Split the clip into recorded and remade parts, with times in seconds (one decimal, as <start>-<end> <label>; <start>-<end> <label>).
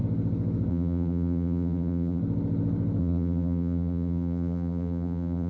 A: 0.0-0.7 recorded; 0.7-2.2 remade; 2.2-3.0 recorded; 3.0-5.5 remade